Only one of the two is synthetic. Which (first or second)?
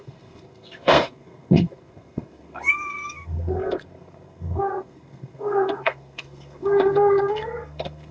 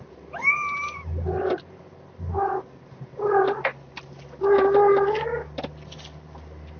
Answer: first